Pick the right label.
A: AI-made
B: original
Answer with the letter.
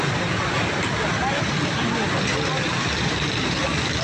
B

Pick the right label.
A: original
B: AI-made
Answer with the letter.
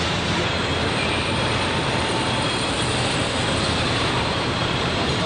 B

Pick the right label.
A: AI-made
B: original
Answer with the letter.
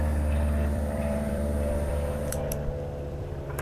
A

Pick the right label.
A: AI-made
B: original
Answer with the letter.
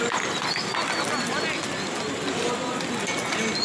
B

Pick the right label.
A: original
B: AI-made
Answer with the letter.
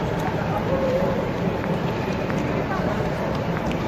B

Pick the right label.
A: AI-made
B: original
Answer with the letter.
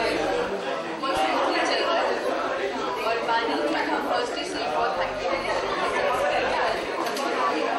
A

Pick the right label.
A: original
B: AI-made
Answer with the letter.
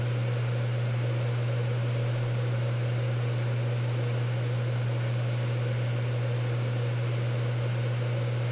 A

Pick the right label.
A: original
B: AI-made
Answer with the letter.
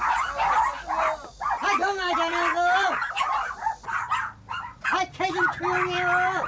A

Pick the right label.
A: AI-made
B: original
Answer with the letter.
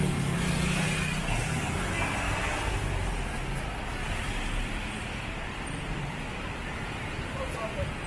B